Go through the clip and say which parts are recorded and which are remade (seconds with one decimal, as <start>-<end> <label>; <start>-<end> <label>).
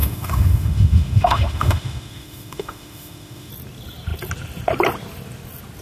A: 0.0-3.5 remade; 3.5-5.8 recorded